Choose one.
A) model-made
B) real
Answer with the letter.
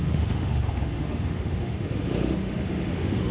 A